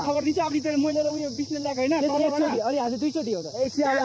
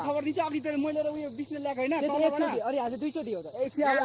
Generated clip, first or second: first